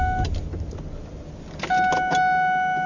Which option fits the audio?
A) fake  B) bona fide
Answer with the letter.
B